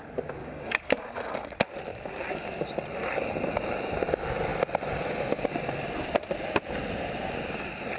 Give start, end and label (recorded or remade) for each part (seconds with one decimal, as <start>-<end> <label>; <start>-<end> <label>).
0.0-0.4 recorded; 0.4-1.5 remade; 1.5-1.9 recorded; 1.9-2.4 remade; 2.4-8.0 recorded